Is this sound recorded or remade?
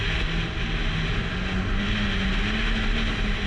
recorded